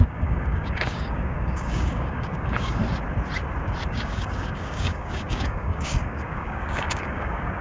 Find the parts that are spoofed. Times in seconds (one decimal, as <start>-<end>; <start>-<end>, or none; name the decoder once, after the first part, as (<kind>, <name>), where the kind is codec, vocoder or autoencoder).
0.0-2.8 (codec, DAC); 3.9-7.6